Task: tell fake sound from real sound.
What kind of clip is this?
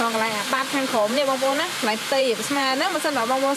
fake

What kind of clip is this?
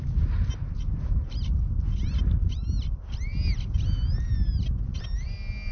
real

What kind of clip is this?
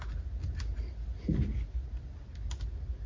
real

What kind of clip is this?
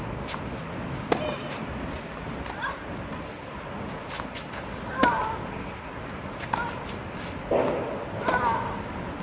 real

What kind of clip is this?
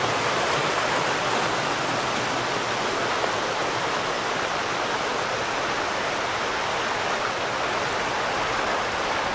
real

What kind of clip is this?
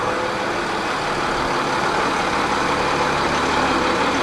real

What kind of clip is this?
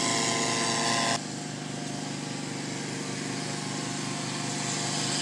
real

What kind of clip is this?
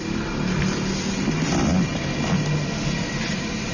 real